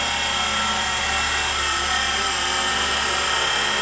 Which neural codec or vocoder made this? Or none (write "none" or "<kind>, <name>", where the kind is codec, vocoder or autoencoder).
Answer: none